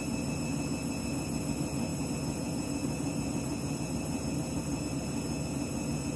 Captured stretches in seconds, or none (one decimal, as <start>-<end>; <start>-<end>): 0.0-1.9; 4.8-6.2